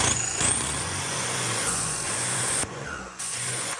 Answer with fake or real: fake